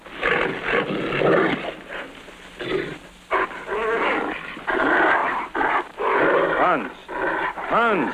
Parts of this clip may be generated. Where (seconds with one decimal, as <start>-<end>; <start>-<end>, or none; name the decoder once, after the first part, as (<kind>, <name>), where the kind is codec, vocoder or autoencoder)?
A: none